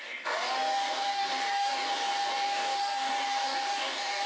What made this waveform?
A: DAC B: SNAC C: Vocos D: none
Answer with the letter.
A